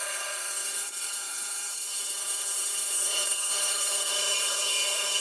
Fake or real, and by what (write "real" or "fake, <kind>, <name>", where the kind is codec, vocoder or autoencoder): fake, codec, HILCodec